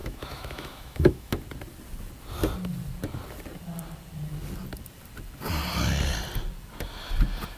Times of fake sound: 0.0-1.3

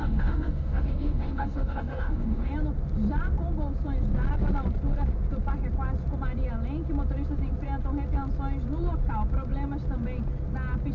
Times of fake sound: 0.0-2.5

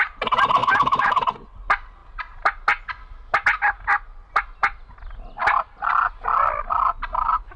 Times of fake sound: 0.6-1.2

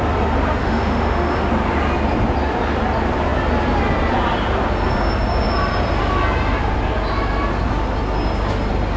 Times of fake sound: 0.6-1.5

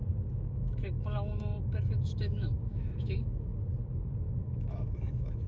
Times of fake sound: 0.5-3.5; 4.4-5.5

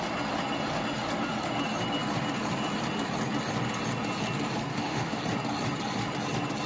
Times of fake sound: 4.7-5.2

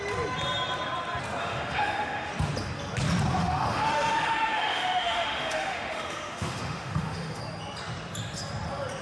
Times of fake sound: 1.4-2.3; 3.4-7.4

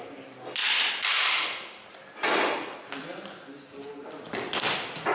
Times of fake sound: none